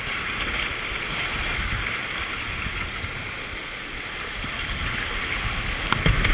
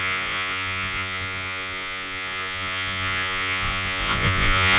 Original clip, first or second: first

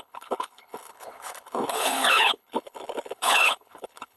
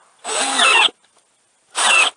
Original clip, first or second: second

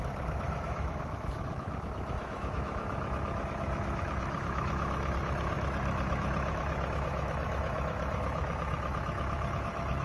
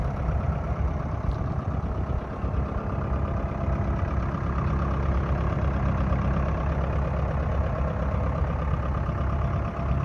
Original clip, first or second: second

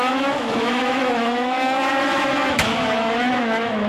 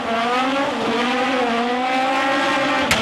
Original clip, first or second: second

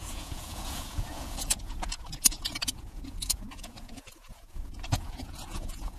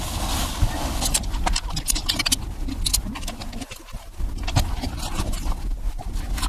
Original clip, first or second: second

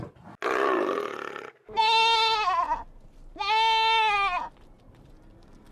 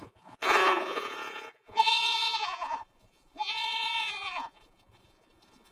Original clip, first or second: first